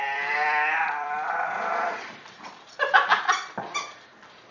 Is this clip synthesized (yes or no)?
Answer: yes